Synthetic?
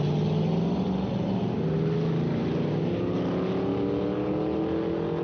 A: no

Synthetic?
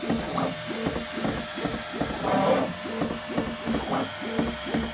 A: no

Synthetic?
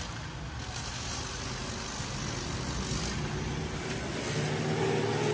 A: no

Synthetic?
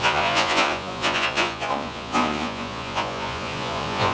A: yes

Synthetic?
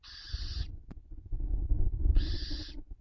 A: yes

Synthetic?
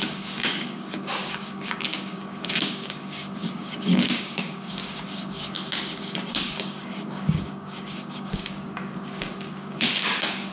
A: yes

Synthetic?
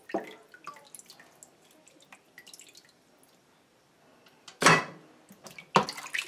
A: no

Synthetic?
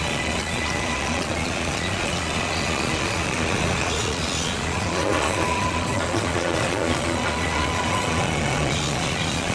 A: yes